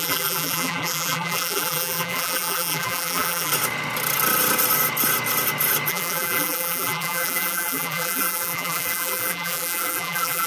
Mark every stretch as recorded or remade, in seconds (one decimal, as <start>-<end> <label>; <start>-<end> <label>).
0.0-3.5 remade; 3.5-5.9 recorded; 5.9-10.5 remade